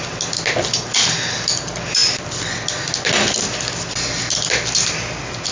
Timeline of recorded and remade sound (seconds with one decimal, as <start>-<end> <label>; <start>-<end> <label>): 0.0-5.5 recorded